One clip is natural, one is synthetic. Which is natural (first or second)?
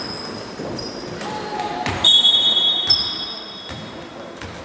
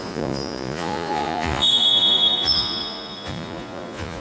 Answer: first